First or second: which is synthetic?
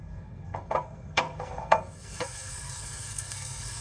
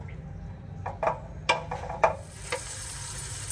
first